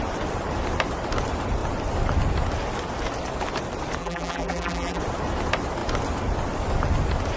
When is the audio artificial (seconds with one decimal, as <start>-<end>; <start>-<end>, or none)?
4.0-5.0